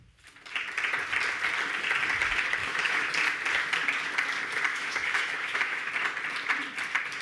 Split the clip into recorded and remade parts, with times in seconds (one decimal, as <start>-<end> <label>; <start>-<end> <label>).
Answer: 0.0-2.6 recorded; 2.6-3.1 remade; 3.1-4.7 recorded; 4.7-5.9 remade; 5.9-7.2 recorded